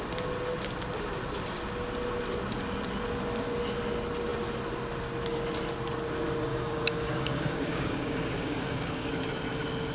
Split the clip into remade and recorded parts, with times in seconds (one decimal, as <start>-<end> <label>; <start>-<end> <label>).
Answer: 0.0-6.5 recorded; 6.5-9.1 remade; 9.1-9.9 recorded